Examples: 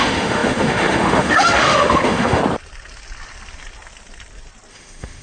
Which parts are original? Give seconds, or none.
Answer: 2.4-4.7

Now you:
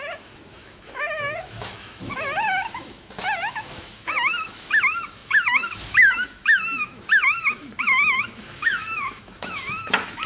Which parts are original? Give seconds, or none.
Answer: none

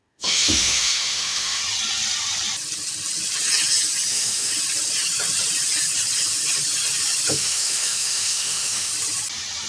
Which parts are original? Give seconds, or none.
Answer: 1.6-4.1; 4.5-7.3; 8.9-9.7

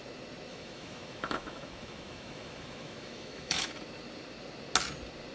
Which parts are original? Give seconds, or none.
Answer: 0.0-0.5; 3.7-5.3